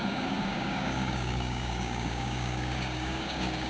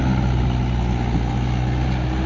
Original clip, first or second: second